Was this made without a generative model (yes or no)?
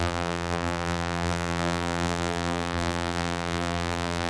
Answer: no